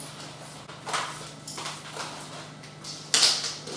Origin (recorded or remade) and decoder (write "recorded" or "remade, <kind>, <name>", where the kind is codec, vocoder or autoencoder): recorded